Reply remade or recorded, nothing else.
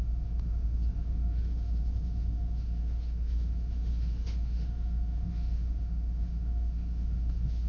remade